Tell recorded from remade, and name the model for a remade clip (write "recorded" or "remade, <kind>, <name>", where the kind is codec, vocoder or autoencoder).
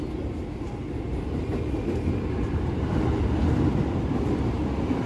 recorded